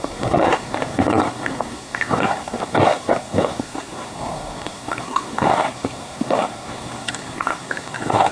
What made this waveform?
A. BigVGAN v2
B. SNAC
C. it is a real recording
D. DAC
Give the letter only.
B